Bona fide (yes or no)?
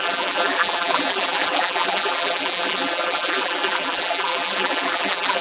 no